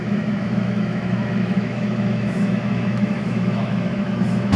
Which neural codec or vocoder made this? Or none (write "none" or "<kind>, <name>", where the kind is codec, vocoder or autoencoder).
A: autoencoder, DAC-VAE